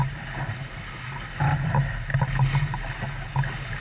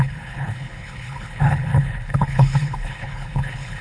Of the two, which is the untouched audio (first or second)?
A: first